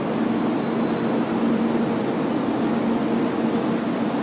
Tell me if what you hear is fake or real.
real